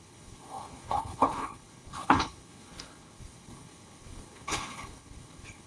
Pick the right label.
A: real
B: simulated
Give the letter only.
B